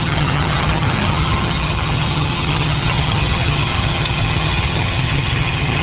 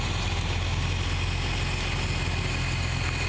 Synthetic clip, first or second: first